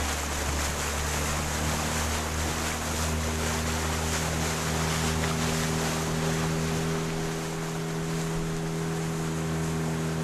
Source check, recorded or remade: recorded